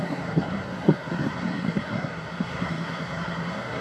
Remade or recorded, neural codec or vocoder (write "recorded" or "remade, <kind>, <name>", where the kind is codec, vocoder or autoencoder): remade, codec, SNAC